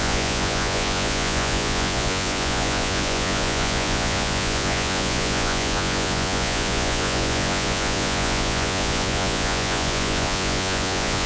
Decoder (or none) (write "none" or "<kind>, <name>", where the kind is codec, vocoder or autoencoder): vocoder, Vocos